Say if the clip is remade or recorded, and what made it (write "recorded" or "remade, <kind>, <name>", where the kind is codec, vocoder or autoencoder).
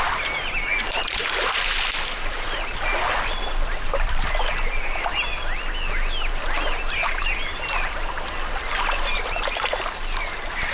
recorded